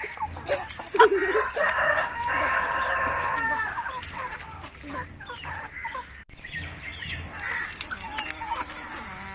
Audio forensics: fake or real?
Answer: real